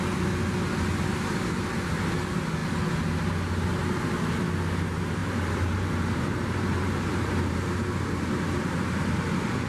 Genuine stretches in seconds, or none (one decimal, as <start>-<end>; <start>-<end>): 0.0-5.2; 9.1-9.7